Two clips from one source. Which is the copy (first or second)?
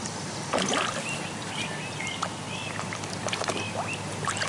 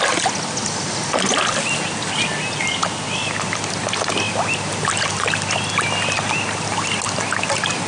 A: first